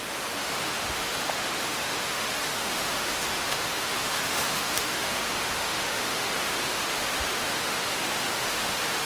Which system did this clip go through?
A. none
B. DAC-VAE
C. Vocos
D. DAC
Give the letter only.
B